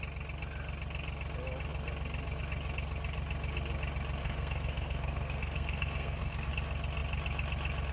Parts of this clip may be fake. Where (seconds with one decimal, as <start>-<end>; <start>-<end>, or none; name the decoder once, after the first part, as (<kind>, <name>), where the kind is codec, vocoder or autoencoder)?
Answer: 4.2-6.5 (codec, SNAC)